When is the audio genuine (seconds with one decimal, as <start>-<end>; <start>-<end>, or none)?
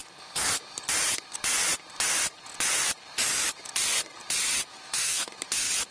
0.0-4.7; 5.3-5.9